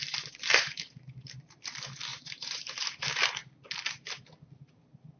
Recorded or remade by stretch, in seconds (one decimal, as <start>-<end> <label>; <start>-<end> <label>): 0.0-1.6 remade; 1.6-2.1 recorded; 2.1-3.0 remade; 3.0-5.2 recorded

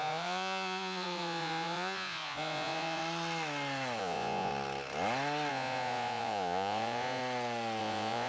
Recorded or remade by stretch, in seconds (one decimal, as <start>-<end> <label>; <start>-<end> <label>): 0.0-3.0 remade; 3.0-4.0 recorded; 4.0-4.5 remade; 4.5-5.5 recorded; 5.5-7.2 remade; 7.2-7.8 recorded; 7.8-8.3 remade

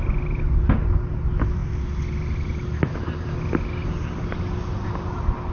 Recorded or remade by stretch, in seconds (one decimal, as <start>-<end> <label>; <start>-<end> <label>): 0.0-5.5 recorded

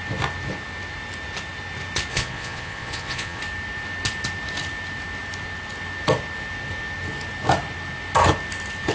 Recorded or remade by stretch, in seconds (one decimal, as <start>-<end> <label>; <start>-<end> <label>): 0.0-2.1 recorded; 2.1-3.4 remade; 3.4-8.9 recorded

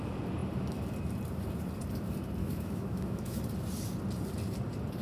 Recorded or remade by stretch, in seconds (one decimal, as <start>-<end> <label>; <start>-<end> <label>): 0.0-2.4 recorded; 2.4-3.4 remade; 3.4-5.0 recorded

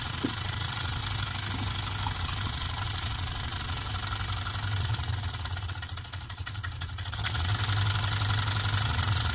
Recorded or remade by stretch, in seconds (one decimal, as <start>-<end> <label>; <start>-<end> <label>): 0.0-1.0 remade; 1.0-2.2 recorded; 2.2-3.9 remade; 3.9-4.8 recorded; 4.8-7.5 remade; 7.5-8.8 recorded; 8.8-9.3 remade

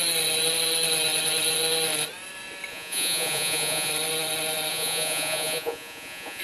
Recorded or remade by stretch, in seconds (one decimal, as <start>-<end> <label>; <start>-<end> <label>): 0.0-2.7 recorded; 2.7-3.9 remade; 3.9-4.7 recorded; 4.7-6.4 remade

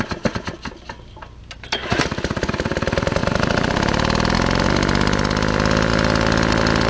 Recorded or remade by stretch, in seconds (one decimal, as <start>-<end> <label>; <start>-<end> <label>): 0.0-6.9 recorded